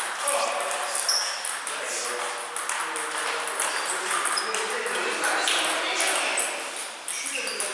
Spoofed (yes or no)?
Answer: no